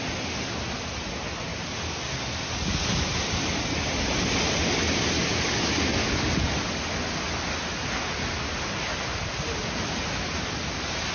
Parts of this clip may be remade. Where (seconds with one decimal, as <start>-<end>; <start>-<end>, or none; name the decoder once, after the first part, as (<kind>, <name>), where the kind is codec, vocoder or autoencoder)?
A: none